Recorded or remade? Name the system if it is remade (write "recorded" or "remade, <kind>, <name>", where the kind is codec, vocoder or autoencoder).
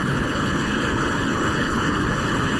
remade, codec, HILCodec